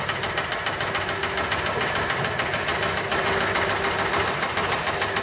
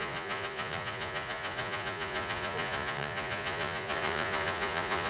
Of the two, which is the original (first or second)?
first